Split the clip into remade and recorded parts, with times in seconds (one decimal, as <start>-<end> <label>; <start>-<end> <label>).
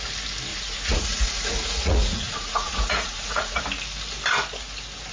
0.0-0.5 recorded; 0.5-3.6 remade; 3.6-5.1 recorded